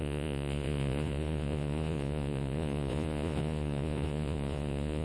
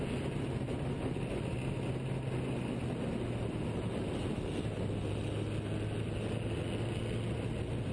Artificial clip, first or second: first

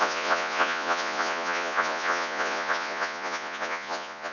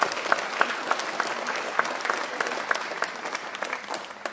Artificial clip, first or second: first